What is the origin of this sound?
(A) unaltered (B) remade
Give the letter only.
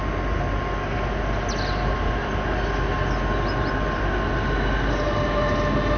A